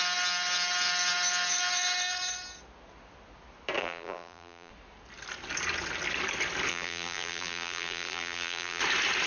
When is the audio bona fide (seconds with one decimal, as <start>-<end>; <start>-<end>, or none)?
0.0-3.8; 4.7-6.7; 8.8-9.3